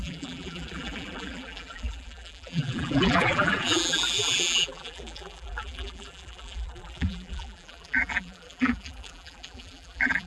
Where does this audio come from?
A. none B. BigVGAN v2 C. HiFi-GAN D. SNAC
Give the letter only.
B